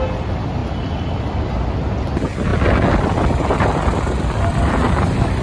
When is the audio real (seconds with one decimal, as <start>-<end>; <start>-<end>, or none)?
0.0-5.4

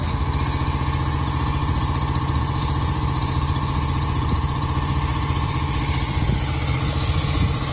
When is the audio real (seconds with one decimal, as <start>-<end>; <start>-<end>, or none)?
0.0-7.7

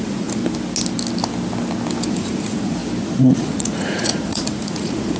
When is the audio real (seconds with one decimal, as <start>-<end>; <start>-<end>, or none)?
0.4-2.1; 2.8-3.4

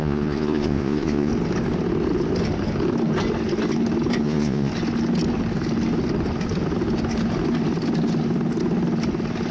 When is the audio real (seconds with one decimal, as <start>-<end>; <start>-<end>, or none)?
1.3-4.2; 4.7-9.5

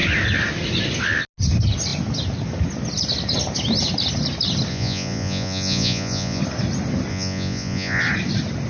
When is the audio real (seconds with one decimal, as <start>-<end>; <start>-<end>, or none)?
0.0-4.7; 6.4-7.1; 8.0-8.7

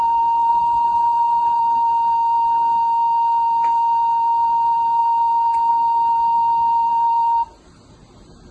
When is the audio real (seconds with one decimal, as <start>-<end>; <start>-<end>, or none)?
0.0-0.5; 1.6-8.5